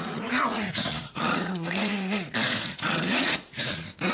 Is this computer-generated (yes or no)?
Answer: yes